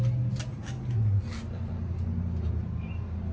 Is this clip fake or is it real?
real